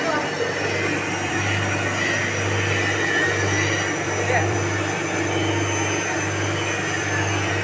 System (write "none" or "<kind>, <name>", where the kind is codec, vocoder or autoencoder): vocoder, BigVGAN v2